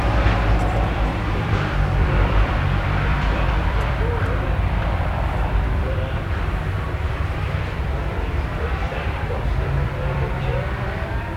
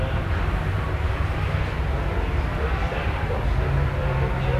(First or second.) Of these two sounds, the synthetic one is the first